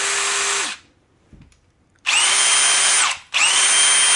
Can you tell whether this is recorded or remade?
recorded